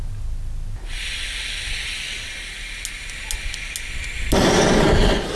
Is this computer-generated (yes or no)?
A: no